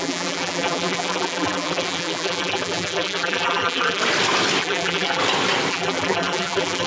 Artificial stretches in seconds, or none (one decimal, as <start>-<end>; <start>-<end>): 0.0-4.0; 4.6-5.2; 5.7-6.9